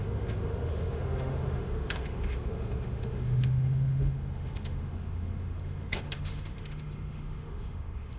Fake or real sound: fake